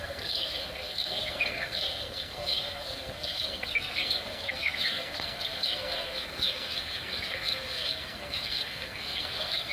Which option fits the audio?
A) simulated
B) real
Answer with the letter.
A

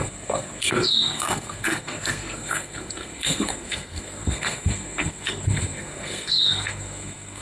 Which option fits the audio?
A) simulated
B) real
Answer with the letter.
A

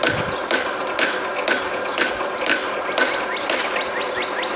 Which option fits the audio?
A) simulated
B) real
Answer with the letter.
B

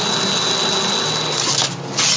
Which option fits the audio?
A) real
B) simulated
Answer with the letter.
A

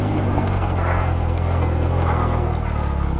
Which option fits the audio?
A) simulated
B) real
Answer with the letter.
A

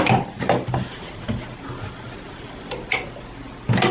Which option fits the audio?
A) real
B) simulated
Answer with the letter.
A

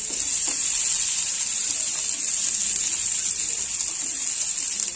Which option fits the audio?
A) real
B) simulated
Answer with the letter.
A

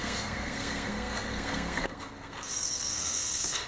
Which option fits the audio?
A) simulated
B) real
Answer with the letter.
A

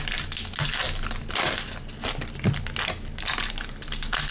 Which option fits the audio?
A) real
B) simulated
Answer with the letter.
A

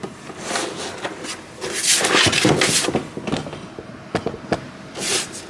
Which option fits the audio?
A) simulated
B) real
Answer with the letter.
B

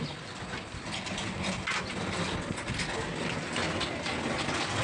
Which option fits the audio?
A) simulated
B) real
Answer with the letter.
B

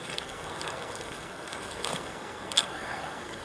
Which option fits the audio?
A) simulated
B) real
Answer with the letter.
A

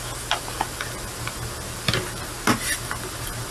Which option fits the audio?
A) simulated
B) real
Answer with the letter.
B